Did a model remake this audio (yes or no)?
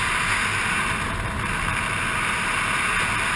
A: no